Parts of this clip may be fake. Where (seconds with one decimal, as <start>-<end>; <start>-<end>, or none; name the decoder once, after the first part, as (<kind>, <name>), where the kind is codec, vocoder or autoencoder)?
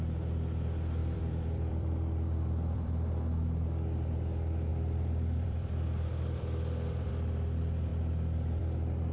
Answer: 1.0-3.1 (vocoder, BigVGAN v2); 4.7-7.1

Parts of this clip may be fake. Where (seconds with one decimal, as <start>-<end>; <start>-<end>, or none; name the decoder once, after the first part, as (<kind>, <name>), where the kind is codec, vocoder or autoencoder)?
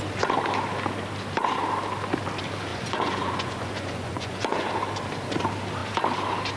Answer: 2.7-4.7 (vocoder, Vocos)